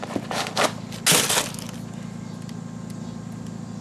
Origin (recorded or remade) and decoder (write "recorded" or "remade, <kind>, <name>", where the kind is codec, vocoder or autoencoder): recorded